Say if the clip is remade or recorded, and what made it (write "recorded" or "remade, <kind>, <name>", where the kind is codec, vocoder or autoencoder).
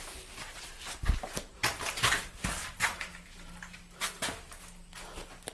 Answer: recorded